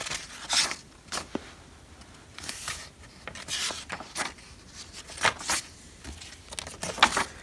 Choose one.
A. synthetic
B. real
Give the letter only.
B